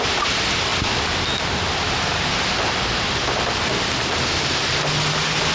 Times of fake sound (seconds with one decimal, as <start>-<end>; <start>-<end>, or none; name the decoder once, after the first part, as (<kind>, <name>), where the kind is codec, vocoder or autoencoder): none